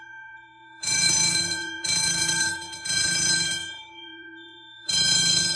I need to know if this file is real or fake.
fake